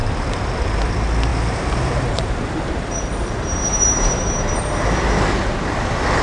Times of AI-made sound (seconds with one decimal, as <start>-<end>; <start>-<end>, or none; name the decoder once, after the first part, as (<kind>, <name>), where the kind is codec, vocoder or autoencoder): 0.0-0.9 (vocoder, BigVGAN v2); 1.3-4.7